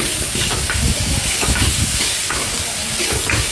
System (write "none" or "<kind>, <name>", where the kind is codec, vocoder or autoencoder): codec, DAC